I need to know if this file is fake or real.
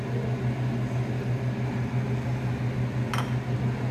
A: real